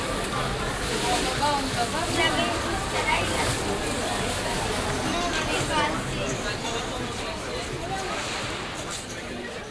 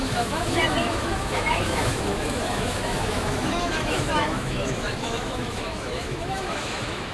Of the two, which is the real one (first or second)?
first